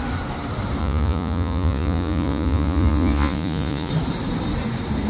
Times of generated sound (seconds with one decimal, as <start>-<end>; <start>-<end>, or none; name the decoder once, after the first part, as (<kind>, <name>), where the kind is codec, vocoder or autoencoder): 0.8-3.9 (vocoder, Vocos)